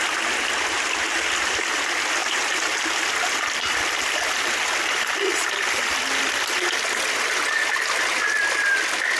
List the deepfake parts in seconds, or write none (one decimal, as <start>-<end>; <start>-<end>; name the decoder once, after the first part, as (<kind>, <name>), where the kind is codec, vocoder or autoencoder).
none